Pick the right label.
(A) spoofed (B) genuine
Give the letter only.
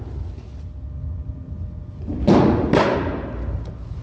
B